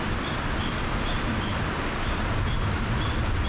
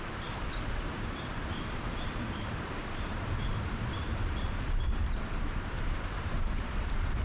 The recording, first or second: first